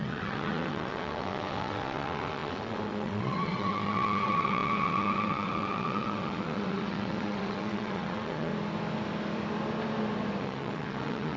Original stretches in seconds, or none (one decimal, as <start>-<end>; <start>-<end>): 8.5-10.4